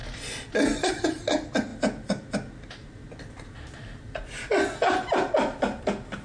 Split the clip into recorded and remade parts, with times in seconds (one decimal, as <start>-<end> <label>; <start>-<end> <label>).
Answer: 0.0-6.2 recorded